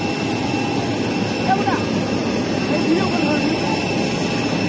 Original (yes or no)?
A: yes